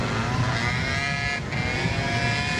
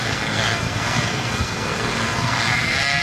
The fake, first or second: second